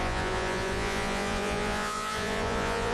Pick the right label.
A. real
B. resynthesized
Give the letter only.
B